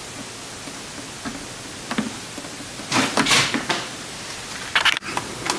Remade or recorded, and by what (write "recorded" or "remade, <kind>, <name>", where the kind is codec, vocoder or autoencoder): recorded